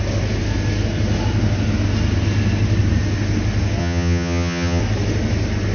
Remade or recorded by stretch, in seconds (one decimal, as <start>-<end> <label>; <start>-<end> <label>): 0.0-3.8 recorded; 3.8-4.8 remade; 4.8-5.7 recorded